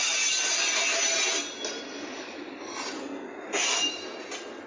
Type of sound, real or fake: real